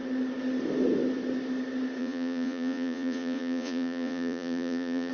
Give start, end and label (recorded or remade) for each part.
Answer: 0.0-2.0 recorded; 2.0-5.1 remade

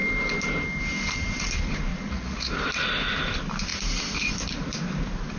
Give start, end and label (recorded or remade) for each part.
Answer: 0.0-1.9 recorded; 1.9-2.5 remade; 2.5-5.4 recorded

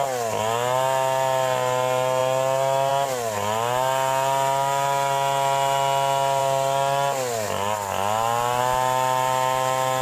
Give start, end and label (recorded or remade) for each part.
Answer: 0.0-10.0 recorded